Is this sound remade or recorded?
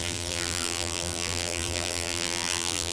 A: remade